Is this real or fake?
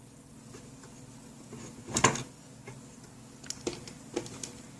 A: real